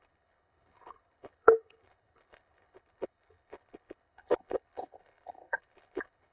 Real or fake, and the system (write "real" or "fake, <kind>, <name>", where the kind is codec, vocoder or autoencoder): fake, codec, HILCodec